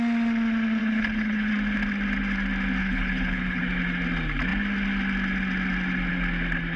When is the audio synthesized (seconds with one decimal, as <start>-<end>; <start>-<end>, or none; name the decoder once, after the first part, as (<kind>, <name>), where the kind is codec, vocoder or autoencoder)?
0.8-1.5 (codec, HILCodec); 2.8-3.6